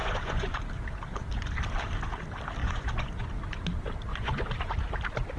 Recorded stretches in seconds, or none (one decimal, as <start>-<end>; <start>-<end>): 0.6-2.6; 3.3-4.1; 4.7-5.4